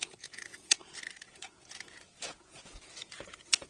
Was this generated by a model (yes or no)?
yes